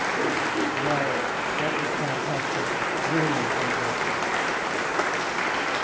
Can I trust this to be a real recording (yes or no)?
yes